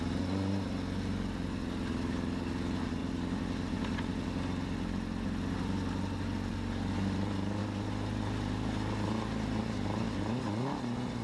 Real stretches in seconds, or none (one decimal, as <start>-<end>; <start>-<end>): 0.0-11.2